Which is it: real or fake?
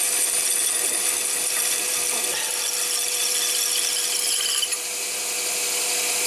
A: real